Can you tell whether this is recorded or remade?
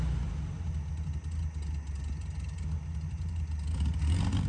recorded